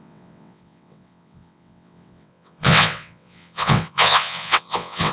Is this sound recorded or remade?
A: remade